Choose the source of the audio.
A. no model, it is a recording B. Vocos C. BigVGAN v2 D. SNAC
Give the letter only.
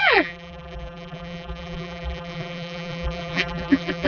C